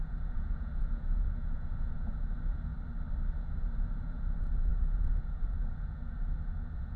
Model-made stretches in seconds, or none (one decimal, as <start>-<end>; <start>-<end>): 0.0-2.7; 3.5-7.0